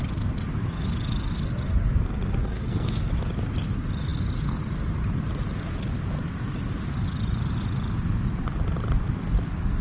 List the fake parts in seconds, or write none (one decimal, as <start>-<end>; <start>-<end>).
2.4-3.1